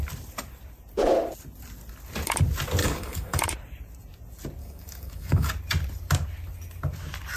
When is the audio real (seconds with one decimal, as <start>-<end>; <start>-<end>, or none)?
0.0-2.8; 3.4-4.6; 5.5-7.4